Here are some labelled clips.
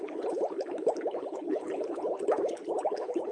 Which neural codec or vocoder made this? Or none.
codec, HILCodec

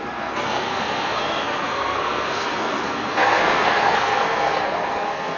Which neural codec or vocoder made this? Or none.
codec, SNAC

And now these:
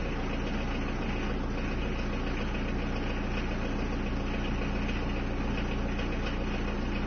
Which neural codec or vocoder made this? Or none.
none